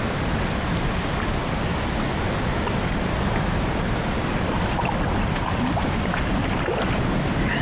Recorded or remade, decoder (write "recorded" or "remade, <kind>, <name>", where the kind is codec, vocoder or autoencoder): recorded